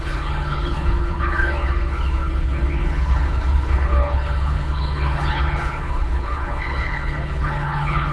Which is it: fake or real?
fake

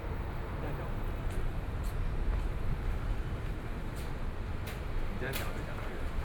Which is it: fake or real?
fake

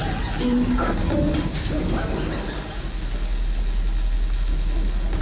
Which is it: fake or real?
real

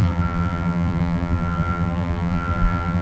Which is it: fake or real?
fake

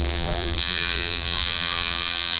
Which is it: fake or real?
fake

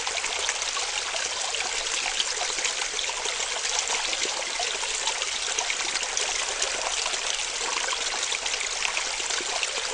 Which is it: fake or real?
real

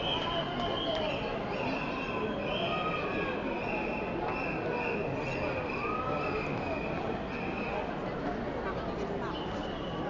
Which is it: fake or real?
real